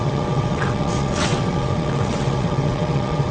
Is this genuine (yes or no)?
no